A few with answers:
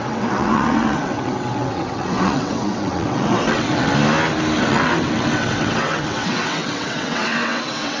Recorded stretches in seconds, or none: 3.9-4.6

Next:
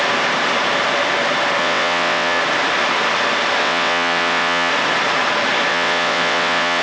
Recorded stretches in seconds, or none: 0.0-1.6; 2.4-3.6; 4.7-5.7

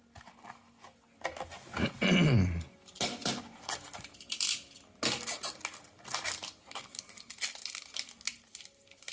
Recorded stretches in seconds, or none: 0.0-9.1

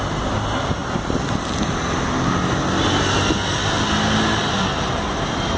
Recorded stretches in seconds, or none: 0.0-5.6

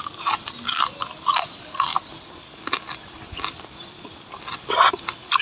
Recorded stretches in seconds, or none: 0.0-5.4

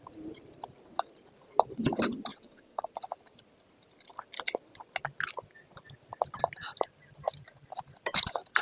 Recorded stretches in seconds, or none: 0.0-2.3; 2.9-8.6